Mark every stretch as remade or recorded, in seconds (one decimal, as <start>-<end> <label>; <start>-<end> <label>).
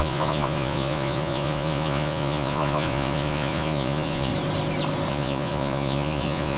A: 0.0-4.3 remade; 4.3-5.1 recorded; 5.1-6.6 remade